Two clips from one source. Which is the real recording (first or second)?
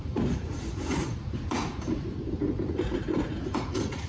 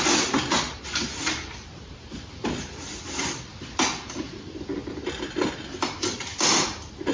second